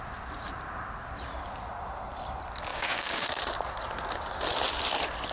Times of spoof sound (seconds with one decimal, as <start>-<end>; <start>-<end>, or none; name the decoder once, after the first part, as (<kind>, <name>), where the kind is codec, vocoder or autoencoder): 2.7-3.4 (codec, DAC)